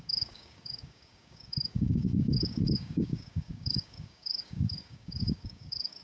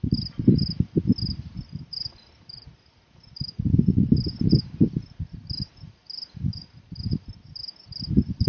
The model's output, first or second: first